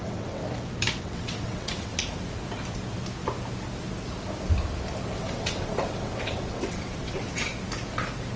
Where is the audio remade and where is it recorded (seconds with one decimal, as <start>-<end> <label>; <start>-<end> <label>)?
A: 0.0-0.4 remade; 0.4-1.0 recorded; 1.0-1.9 remade; 1.9-5.2 recorded; 5.2-7.5 remade; 7.5-8.4 recorded